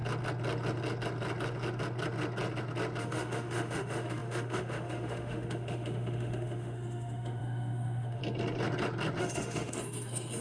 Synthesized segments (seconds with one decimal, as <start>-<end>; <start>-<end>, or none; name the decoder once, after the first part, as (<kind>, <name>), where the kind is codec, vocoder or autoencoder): 3.0-8.2 (autoencoder, DAC-VAE); 9.2-10.4